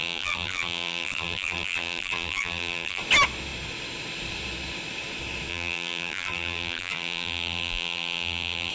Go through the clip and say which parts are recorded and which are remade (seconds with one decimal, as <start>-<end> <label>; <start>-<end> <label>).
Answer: 0.0-3.0 remade; 3.0-5.5 recorded; 5.5-8.7 remade